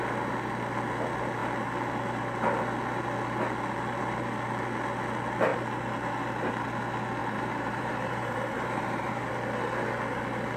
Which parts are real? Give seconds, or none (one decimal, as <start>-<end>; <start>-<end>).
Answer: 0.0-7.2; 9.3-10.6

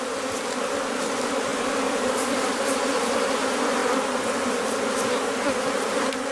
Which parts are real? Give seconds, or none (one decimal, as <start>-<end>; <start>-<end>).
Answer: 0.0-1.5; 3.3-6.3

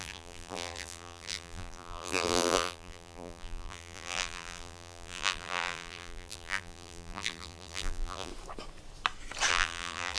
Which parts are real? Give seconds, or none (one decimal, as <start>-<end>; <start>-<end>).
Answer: 8.3-9.5

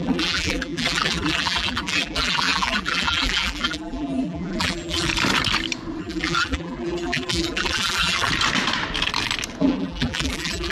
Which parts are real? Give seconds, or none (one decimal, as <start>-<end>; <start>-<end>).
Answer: 5.1-6.0; 8.3-9.6

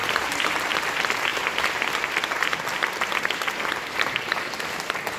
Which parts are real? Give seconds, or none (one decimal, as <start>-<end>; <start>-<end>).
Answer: 0.8-1.3; 4.4-5.2

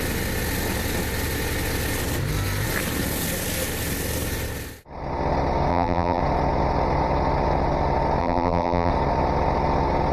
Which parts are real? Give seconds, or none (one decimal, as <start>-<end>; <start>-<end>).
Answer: 0.0-5.7; 6.2-8.2; 8.9-10.1

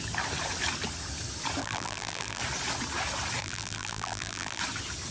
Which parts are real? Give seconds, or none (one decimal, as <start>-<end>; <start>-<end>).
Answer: 0.0-1.6; 2.4-3.4; 4.6-5.1

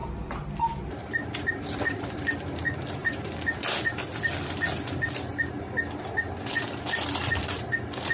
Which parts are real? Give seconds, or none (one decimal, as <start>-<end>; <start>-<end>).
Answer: 0.0-1.4; 3.0-8.1